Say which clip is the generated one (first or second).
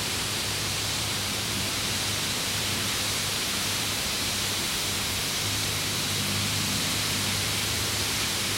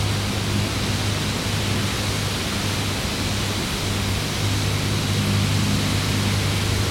first